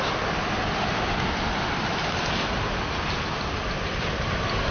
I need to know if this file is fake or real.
real